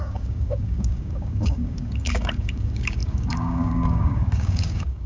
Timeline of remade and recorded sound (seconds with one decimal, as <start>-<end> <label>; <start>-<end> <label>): 0.0-5.1 remade